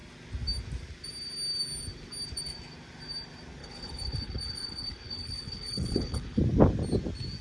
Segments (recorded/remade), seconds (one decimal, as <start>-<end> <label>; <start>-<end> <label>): 0.0-3.6 recorded; 3.6-6.4 remade; 6.4-7.4 recorded